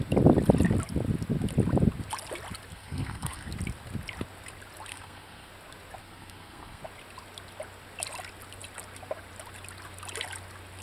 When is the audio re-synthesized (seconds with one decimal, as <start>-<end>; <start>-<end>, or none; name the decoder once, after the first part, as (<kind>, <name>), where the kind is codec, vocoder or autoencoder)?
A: 2.7-3.5 (codec, SNAC); 4.9-5.5; 6.0-6.8